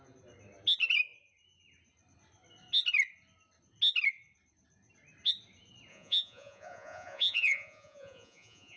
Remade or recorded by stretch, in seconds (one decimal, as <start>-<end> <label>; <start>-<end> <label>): 0.0-5.9 recorded; 5.9-8.8 remade